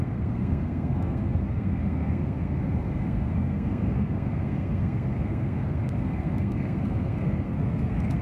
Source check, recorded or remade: remade